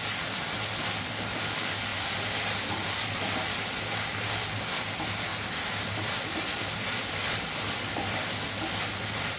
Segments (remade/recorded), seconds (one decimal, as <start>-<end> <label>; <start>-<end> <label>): 0.0-9.4 recorded